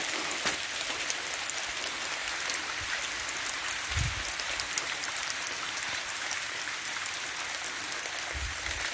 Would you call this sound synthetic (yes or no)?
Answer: no